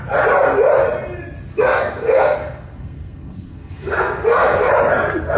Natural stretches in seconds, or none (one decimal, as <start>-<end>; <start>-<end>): 0.0-1.5; 4.7-5.4